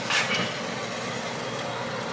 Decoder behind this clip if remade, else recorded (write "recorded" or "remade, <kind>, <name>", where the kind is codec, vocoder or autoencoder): recorded